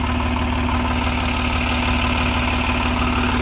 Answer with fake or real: real